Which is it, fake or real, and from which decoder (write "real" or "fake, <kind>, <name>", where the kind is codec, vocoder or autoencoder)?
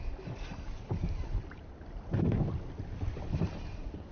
real